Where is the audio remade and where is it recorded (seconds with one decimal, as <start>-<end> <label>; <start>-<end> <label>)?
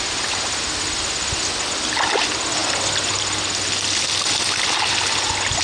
0.0-5.6 recorded